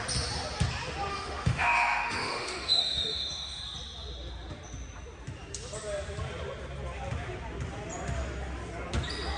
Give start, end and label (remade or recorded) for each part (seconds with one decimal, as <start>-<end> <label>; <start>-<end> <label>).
0.0-1.1 recorded; 1.1-3.6 remade; 3.6-9.4 recorded